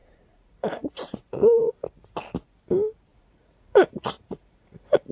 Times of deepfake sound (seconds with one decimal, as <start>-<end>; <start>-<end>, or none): 0.0-1.7; 3.1-5.1